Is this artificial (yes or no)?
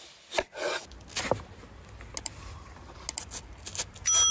no